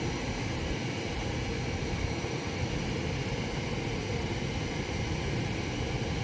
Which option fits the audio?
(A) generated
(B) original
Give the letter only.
B